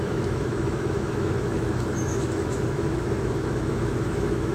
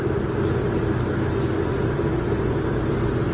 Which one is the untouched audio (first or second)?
second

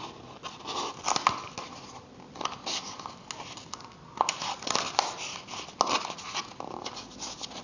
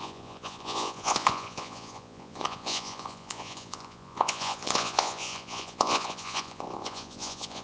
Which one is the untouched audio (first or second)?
first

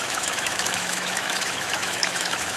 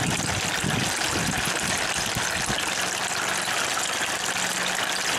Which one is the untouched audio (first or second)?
second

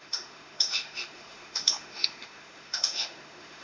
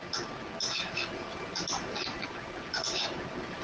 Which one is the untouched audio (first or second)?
second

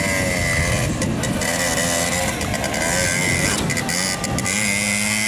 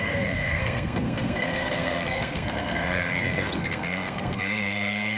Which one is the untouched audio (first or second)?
first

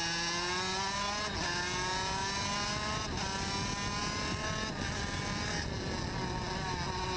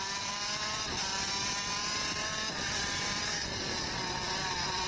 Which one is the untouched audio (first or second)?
first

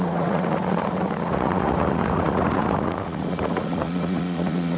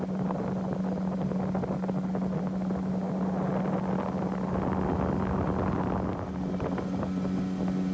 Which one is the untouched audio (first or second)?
second